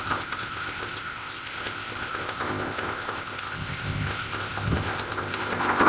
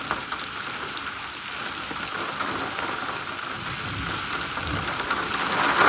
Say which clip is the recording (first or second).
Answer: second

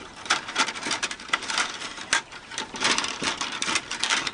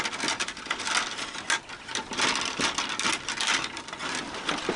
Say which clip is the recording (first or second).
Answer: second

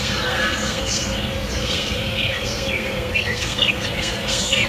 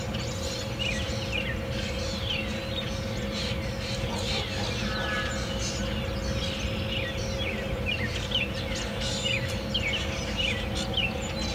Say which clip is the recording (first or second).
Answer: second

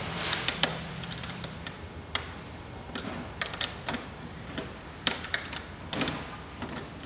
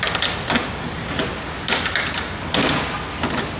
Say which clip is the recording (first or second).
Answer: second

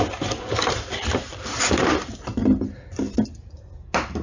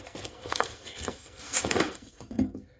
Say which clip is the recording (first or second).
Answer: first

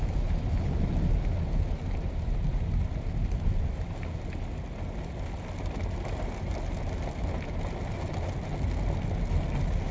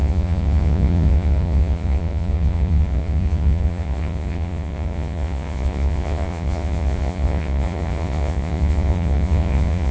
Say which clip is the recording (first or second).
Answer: first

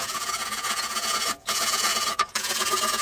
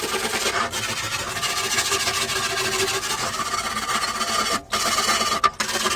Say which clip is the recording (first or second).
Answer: second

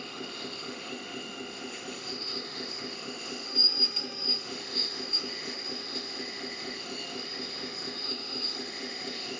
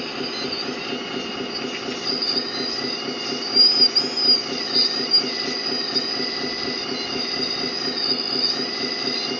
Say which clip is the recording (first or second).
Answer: second